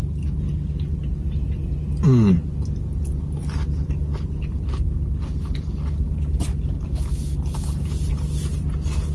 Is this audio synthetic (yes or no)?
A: no